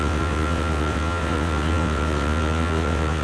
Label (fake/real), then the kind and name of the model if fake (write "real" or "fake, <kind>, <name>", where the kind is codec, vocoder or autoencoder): fake, vocoder, WaveNeXt